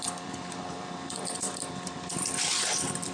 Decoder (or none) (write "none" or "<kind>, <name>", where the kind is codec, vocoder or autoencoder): vocoder, BigVGAN v2